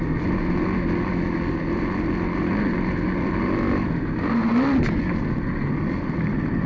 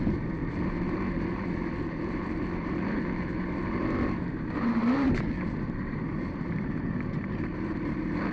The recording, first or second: first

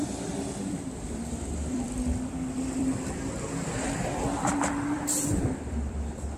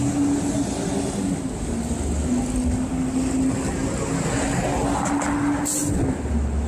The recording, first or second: second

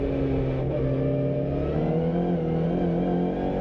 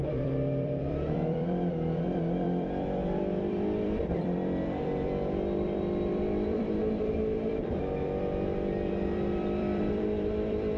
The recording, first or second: first